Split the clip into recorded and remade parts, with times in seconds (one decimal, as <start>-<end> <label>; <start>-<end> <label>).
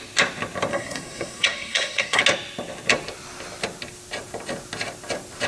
0.0-0.7 recorded; 0.7-2.2 remade; 2.2-5.5 recorded